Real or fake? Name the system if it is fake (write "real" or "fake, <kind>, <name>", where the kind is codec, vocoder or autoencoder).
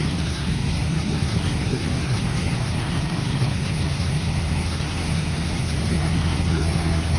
fake, codec, SNAC